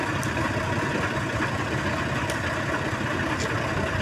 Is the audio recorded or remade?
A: recorded